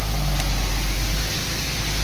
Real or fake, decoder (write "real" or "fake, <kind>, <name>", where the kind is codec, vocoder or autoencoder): real